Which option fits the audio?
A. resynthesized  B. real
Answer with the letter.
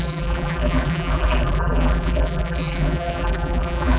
A